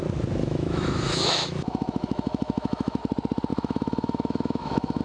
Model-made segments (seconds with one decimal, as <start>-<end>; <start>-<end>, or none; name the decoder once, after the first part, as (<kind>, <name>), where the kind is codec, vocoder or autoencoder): 0.4-3.0 (autoencoder, DAC-VAE); 3.5-5.0